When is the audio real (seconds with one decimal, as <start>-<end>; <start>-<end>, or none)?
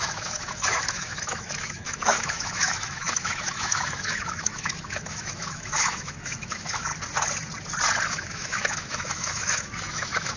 6.9-8.1